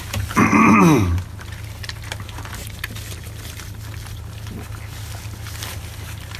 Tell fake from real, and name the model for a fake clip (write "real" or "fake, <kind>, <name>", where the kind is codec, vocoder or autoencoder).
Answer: real